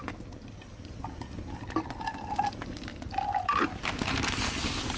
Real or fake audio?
real